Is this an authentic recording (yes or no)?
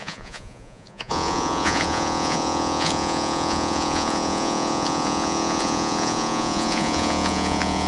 no